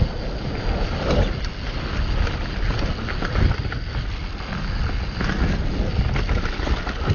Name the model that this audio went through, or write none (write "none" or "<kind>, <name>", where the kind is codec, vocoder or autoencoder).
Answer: none